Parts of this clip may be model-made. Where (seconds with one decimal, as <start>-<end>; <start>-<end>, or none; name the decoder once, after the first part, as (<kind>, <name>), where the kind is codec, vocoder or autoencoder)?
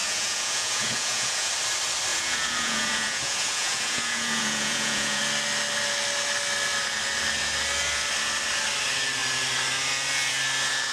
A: 0.0-1.5 (vocoder, Vocos); 2.1-5.2